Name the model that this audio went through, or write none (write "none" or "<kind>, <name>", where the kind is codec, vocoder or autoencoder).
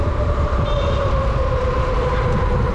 none